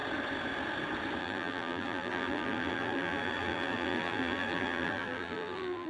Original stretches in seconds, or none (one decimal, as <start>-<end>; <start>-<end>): 0.0-1.2